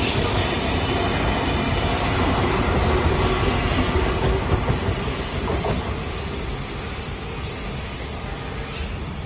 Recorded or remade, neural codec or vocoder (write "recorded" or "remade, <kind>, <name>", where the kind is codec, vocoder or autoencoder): recorded